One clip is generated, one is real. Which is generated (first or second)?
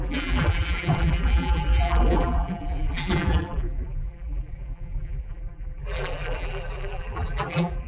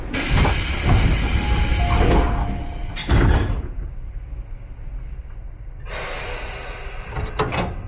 first